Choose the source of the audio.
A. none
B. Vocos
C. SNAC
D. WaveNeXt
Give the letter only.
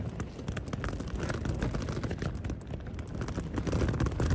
A